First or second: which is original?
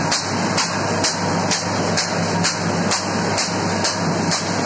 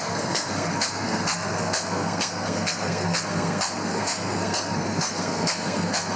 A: first